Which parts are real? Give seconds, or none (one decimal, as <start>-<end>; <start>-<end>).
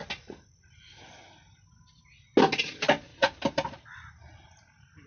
0.0-3.1; 4.4-5.1